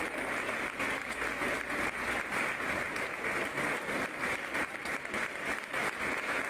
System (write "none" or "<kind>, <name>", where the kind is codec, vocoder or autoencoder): none